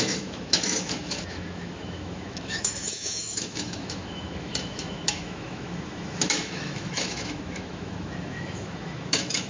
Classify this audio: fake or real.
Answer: fake